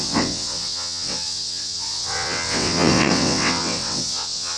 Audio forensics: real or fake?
fake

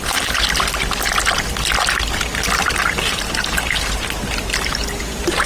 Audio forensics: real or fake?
real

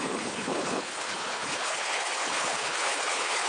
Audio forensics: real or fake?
fake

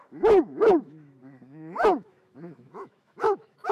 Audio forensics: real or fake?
fake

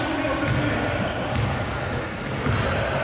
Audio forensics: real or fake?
real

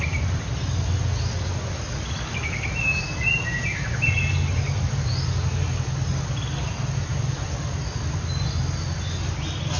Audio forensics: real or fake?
real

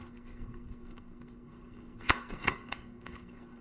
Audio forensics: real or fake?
fake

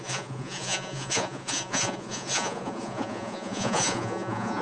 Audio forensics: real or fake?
fake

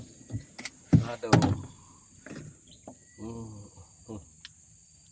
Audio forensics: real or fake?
real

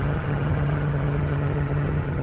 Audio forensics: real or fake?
fake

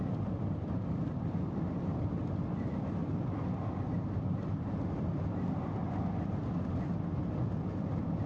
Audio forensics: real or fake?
real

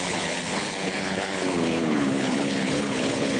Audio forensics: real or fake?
fake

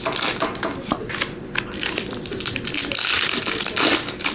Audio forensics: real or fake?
real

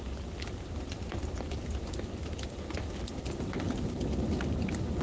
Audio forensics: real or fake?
real